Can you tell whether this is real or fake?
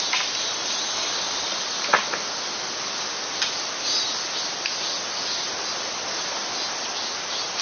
real